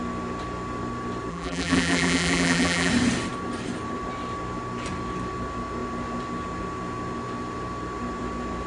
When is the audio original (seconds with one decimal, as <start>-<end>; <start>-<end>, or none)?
0.0-1.3; 2.9-8.7